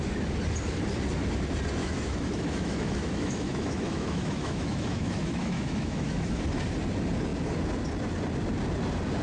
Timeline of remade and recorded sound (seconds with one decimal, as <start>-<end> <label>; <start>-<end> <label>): 0.0-1.8 recorded; 1.8-6.4 remade; 6.4-9.2 recorded